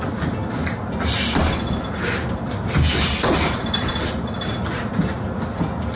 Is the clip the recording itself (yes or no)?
yes